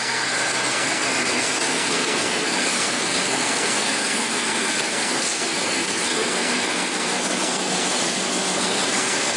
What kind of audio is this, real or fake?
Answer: fake